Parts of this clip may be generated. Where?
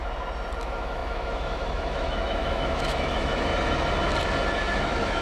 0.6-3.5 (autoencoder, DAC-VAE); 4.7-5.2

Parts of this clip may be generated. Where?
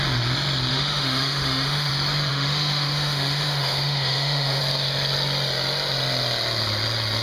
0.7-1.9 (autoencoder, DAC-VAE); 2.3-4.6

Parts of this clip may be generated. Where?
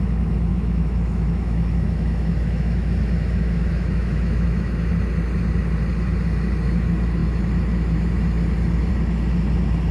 0.5-4.9 (autoencoder, DAC-VAE)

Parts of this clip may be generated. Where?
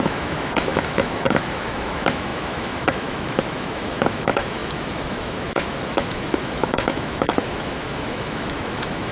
0.0-9.1 (autoencoder, DAC-VAE)